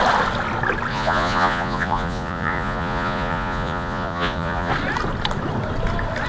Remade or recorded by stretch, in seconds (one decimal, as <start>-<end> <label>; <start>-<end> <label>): 0.0-0.9 recorded; 0.9-4.7 remade; 4.7-6.3 recorded